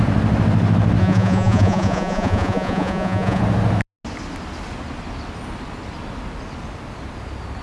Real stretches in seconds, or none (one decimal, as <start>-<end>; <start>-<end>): 0.0-1.0; 3.4-7.6